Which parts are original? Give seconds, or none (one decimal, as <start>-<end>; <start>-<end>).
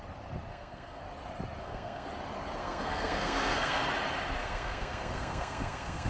0.0-0.5; 1.0-1.6; 2.1-2.6; 3.8-4.4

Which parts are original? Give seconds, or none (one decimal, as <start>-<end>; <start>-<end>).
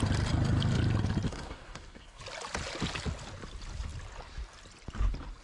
0.0-1.3; 2.2-5.4